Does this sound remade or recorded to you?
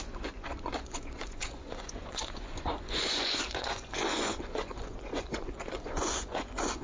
remade